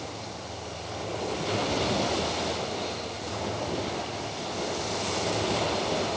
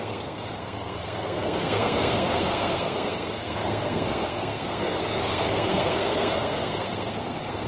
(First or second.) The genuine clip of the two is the first